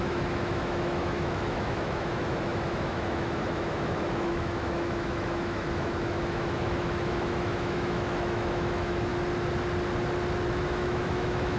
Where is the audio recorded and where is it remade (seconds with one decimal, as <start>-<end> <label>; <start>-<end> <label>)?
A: 0.0-9.1 remade; 9.1-10.5 recorded; 10.5-11.6 remade